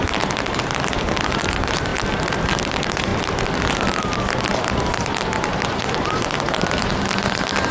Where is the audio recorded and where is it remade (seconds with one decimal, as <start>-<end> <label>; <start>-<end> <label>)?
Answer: 0.0-7.7 recorded